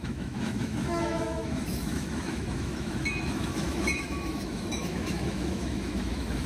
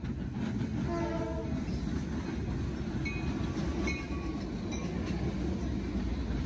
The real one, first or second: second